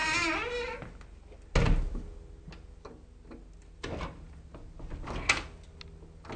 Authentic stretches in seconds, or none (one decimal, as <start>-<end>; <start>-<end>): 0.0-6.4